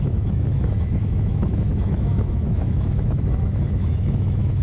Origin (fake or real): fake